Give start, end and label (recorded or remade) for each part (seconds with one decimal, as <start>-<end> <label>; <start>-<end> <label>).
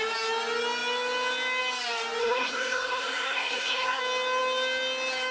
0.0-2.2 recorded; 2.2-4.0 remade; 4.0-5.3 recorded